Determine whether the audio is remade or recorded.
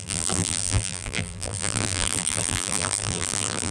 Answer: remade